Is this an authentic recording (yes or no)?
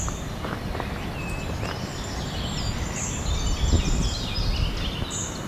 yes